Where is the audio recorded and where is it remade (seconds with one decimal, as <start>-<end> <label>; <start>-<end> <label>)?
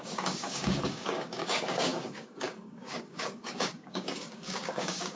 0.0-5.2 remade